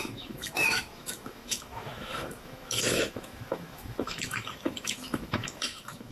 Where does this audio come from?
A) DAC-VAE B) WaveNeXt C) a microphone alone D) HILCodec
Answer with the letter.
A